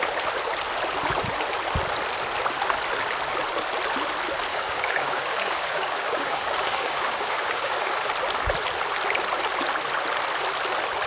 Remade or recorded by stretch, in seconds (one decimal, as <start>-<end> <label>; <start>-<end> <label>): 0.0-4.5 recorded; 4.5-8.1 remade; 8.1-11.1 recorded